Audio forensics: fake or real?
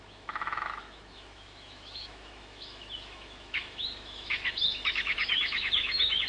fake